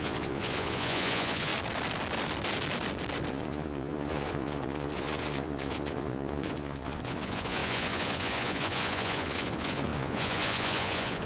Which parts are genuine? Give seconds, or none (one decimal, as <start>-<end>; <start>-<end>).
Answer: 1.5-3.3